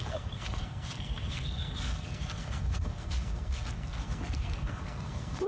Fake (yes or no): yes